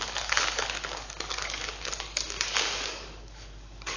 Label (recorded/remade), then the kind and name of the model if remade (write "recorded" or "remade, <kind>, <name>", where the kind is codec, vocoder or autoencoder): remade, codec, DAC